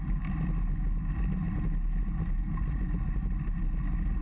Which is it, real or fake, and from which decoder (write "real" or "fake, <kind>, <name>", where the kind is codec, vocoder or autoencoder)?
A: real